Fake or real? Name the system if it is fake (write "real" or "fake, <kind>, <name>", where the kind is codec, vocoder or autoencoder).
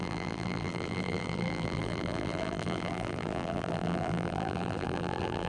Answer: fake, vocoder, BigVGAN v2